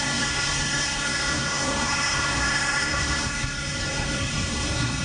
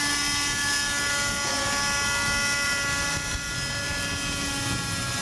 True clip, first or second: second